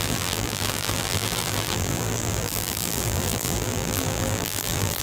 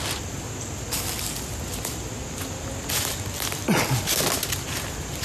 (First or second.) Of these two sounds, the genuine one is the second